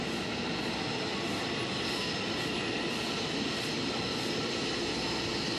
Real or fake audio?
real